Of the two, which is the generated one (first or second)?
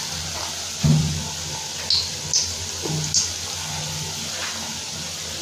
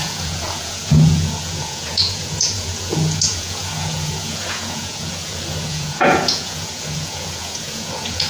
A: second